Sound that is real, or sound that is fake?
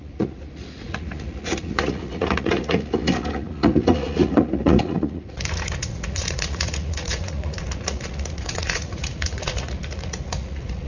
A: fake